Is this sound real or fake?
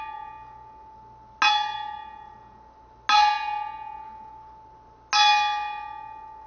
real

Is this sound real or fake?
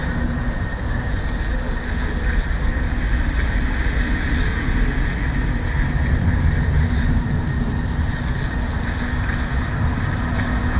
real